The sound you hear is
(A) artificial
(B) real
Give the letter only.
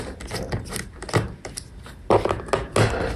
B